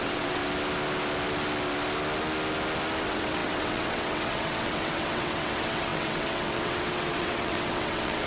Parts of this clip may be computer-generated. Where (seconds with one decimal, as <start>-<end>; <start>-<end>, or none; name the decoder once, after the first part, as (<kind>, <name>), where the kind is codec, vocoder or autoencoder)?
0.0-0.4 (vocoder, WaveNeXt); 3.0-8.3